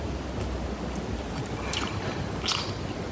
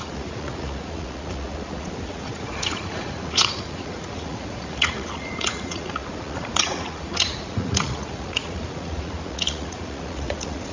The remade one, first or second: second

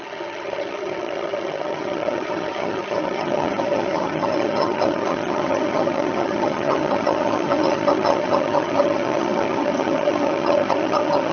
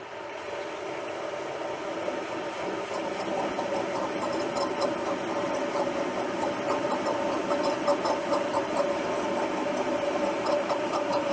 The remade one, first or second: first